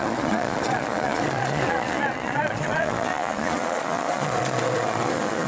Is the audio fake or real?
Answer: fake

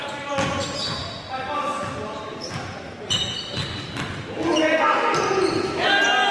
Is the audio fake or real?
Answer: real